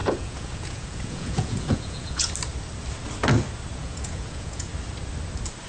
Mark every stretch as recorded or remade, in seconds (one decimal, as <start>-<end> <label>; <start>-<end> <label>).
0.0-2.3 remade; 2.3-3.8 recorded; 3.8-4.7 remade; 4.7-5.7 recorded